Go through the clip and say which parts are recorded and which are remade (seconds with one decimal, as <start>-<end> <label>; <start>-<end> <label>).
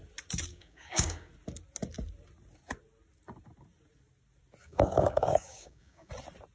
0.0-0.5 recorded; 0.5-1.3 remade; 1.3-4.6 recorded; 4.6-6.1 remade; 6.1-6.5 recorded